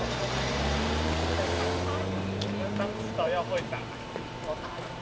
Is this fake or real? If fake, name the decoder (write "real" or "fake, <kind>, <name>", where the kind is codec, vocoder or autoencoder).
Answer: fake, vocoder, BigVGAN v2